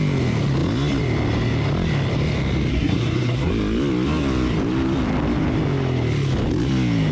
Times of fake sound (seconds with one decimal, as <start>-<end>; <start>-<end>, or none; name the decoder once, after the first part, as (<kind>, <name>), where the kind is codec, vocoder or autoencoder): 2.7-3.5 (codec, SNAC)